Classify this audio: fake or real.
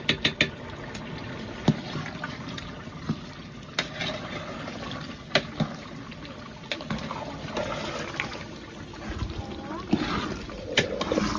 real